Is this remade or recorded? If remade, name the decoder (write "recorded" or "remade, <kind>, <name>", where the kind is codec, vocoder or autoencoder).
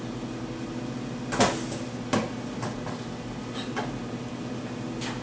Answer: recorded